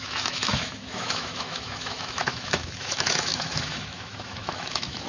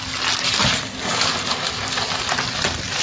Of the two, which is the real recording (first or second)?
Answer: second